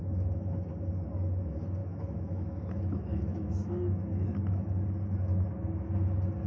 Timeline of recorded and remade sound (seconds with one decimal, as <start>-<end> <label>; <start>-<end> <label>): 0.0-1.8 recorded; 1.8-4.8 remade; 4.8-6.5 recorded